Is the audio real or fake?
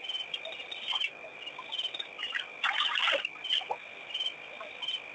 real